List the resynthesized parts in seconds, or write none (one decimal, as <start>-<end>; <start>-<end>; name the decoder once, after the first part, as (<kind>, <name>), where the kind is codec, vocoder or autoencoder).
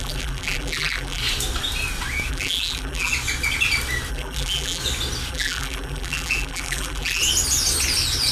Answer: 0.0-1.2 (vocoder, BigVGAN v2); 2.3-3.1; 4.1-4.8; 5.3-7.2